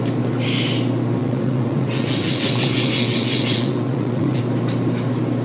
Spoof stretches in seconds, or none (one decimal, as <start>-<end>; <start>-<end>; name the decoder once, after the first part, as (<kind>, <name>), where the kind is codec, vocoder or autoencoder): 1.2-4.4 (vocoder, WaveNeXt)